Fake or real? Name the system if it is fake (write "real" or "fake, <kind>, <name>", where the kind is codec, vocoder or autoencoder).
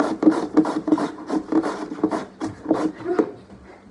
fake, vocoder, BigVGAN v2